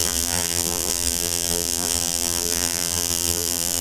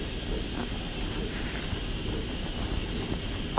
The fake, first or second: first